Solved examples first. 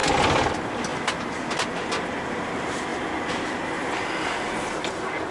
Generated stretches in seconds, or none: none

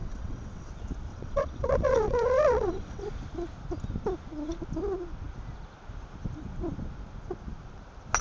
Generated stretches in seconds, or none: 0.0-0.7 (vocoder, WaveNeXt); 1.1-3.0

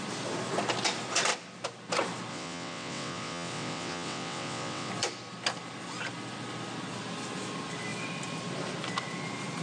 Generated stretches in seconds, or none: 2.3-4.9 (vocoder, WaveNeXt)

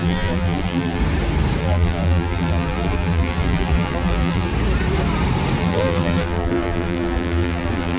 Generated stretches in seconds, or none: 0.0-1.0 (vocoder, BigVGAN v2); 1.6-4.5; 5.6-8.0